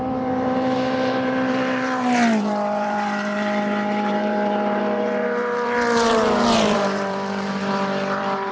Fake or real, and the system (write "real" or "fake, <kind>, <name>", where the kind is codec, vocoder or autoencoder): fake, vocoder, BigVGAN v2